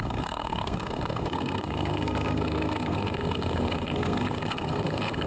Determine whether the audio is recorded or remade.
remade